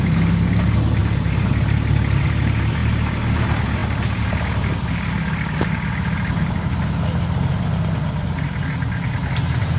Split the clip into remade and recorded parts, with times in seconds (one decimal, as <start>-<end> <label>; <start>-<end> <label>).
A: 0.0-1.0 recorded; 1.0-1.5 remade; 1.5-9.8 recorded